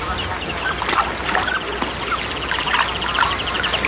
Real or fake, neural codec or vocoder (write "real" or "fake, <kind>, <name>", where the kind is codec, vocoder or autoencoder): real